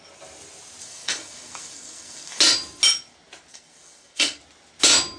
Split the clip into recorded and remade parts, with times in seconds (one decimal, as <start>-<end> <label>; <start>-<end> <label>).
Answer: 0.0-0.8 recorded; 0.8-2.4 remade; 2.4-3.5 recorded; 3.5-4.4 remade; 4.4-5.2 recorded